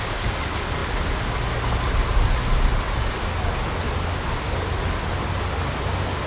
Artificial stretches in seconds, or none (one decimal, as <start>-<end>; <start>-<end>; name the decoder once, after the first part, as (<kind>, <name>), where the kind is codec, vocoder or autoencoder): none